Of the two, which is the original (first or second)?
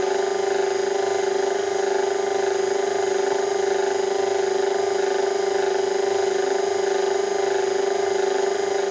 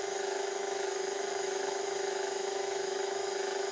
first